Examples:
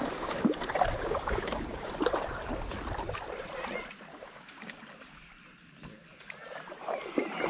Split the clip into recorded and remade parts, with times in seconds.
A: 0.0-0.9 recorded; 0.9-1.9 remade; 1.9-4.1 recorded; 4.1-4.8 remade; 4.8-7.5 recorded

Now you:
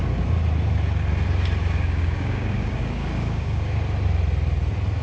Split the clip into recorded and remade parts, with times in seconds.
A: 0.0-1.6 recorded; 1.6-3.8 remade; 3.8-5.0 recorded